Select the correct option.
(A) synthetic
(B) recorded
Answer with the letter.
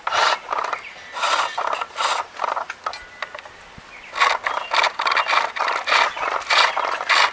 B